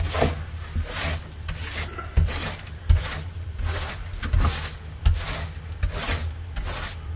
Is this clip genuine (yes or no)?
yes